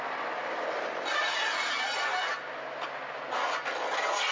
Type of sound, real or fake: real